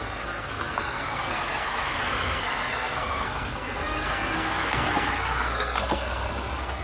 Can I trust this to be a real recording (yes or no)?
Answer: no